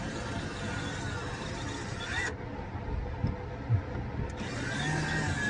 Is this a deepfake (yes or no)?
no